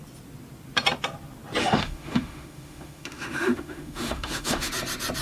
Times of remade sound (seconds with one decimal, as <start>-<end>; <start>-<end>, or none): 1.6-4.7